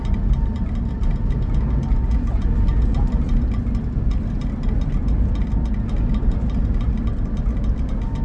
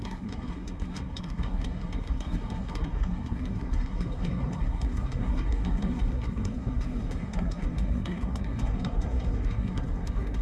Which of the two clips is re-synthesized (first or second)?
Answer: second